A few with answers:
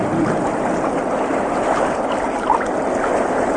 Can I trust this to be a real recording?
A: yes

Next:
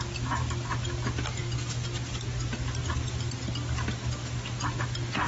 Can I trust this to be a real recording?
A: yes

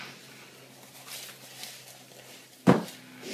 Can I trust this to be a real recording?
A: yes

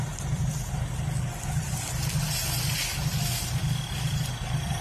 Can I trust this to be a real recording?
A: yes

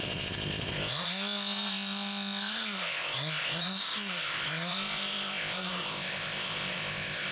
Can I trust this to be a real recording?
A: no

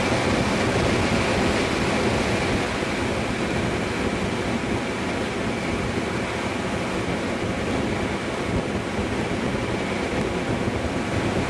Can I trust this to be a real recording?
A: yes